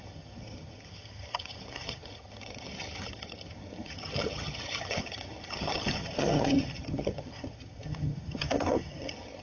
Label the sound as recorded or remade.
remade